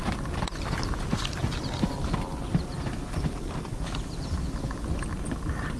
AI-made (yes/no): no